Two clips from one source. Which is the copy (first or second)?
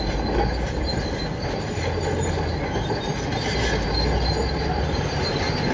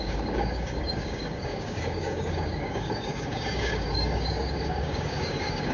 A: second